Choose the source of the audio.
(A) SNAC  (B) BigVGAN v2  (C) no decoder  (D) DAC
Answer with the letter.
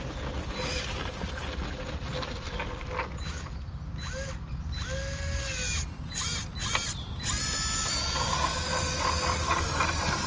C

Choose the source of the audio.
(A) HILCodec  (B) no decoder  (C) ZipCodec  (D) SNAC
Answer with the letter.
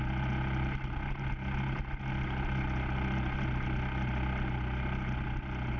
B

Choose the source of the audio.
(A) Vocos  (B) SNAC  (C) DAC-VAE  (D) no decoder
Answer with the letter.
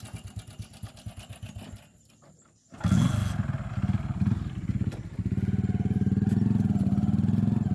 D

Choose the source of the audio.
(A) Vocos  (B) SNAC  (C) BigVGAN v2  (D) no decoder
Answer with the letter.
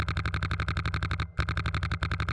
D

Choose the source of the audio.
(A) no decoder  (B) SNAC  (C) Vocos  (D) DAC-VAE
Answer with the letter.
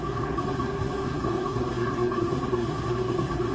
B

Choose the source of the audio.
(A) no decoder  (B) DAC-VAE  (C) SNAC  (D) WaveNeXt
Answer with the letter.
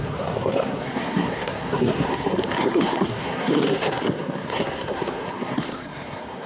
C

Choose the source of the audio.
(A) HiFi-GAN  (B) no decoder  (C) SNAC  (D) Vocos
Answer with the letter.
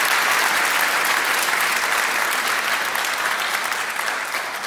B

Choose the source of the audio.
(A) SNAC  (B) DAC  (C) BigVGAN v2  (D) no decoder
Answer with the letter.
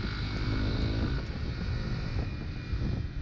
D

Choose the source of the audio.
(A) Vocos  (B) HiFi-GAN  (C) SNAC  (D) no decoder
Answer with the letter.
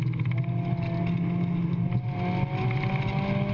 D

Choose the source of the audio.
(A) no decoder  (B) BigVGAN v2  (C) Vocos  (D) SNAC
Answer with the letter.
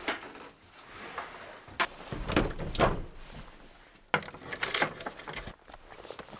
A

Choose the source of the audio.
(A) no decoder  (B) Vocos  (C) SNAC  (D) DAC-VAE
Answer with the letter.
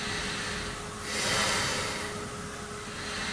A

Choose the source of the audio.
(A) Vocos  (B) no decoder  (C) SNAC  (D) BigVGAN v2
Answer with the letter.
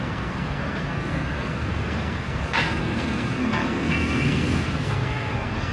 C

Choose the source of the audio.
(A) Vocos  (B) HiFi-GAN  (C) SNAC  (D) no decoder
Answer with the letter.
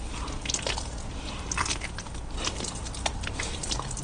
D